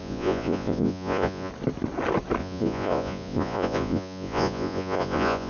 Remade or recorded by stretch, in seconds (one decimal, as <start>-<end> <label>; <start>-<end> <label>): 0.0-1.5 remade; 1.5-2.4 recorded; 2.4-5.5 remade